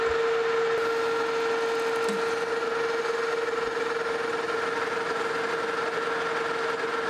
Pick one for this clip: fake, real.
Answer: real